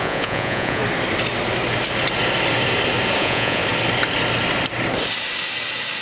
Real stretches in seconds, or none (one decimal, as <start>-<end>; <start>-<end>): 0.8-3.2; 3.6-6.0